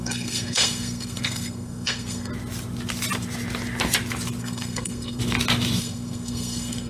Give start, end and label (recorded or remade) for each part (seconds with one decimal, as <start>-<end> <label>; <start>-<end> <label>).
0.0-2.3 remade; 2.3-4.4 recorded; 4.4-5.2 remade; 5.2-5.8 recorded; 5.8-6.9 remade